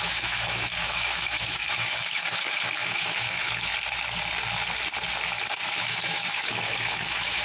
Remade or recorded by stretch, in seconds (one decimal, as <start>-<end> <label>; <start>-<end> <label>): 0.0-3.7 remade; 3.7-5.8 recorded; 5.8-7.4 remade